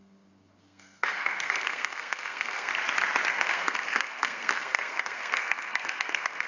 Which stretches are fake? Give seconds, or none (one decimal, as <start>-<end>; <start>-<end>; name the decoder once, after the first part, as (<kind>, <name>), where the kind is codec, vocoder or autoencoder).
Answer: 0.0-2.7 (codec, SNAC); 3.3-6.5